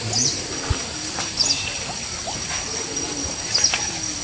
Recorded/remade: recorded